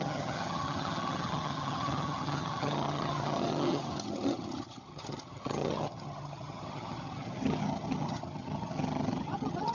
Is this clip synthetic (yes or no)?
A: yes